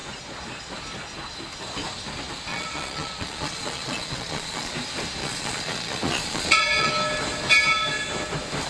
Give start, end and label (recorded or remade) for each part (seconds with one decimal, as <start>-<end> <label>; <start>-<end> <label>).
0.0-2.5 recorded; 2.5-4.7 remade; 4.7-5.2 recorded; 5.2-6.9 remade; 6.9-8.7 recorded